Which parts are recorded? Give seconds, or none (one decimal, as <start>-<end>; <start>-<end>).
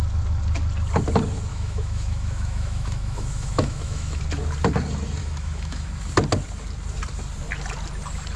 0.0-1.5; 4.2-5.2; 5.9-8.4